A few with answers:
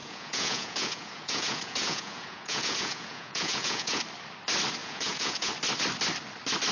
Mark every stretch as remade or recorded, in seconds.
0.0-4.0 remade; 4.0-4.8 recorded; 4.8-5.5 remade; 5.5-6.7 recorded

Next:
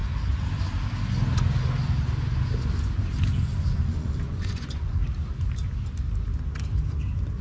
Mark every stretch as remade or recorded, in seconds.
0.0-3.7 recorded; 3.7-5.0 remade; 5.0-7.4 recorded

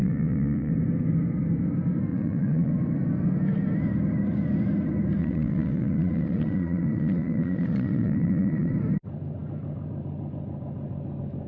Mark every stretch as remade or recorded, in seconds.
0.0-0.7 remade; 0.7-2.1 recorded; 2.1-2.7 remade; 2.7-5.2 recorded; 5.2-8.7 remade; 8.7-11.5 recorded

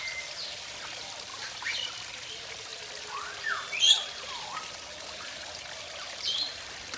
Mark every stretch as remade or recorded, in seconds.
0.0-7.0 recorded

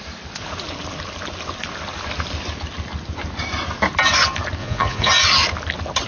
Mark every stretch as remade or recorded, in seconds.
0.0-4.6 recorded; 4.6-5.1 remade; 5.1-6.1 recorded